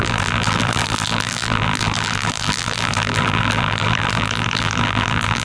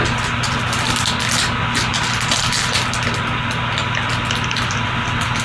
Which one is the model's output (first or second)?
first